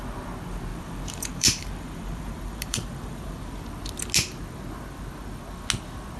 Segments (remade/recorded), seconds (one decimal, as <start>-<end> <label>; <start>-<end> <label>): 0.0-0.7 recorded; 0.7-3.5 remade; 3.5-6.2 recorded